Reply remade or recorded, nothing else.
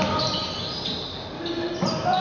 recorded